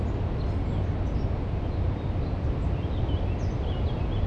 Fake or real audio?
real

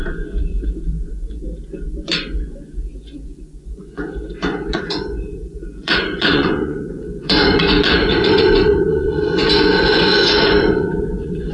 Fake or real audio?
fake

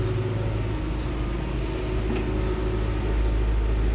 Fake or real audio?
real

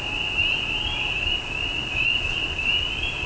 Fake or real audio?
real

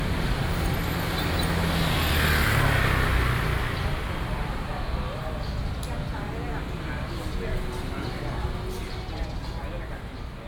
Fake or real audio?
real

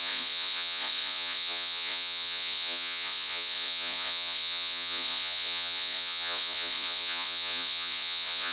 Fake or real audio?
fake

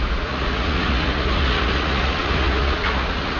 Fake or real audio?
fake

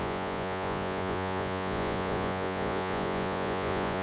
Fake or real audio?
fake